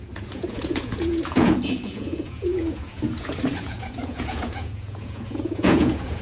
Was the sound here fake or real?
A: fake